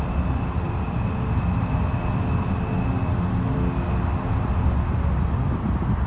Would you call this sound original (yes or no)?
yes